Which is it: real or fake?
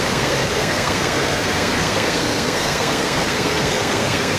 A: fake